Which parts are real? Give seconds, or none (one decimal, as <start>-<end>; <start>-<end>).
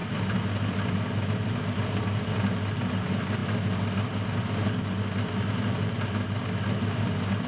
0.0-7.5